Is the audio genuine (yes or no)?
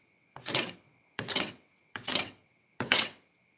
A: no